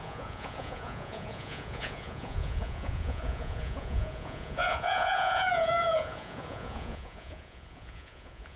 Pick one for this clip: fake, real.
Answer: fake